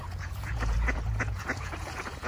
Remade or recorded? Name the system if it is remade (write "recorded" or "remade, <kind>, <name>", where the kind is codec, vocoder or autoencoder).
remade, vocoder, Vocos